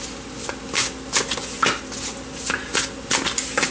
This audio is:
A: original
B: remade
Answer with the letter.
A